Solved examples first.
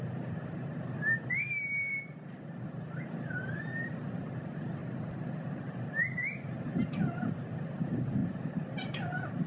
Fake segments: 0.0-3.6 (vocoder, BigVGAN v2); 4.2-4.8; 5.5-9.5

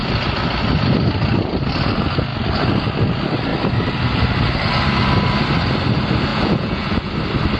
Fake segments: 6.3-7.1 (vocoder, Vocos)

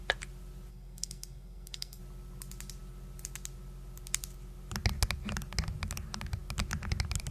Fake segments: 0.7-2.0 (codec, SNAC)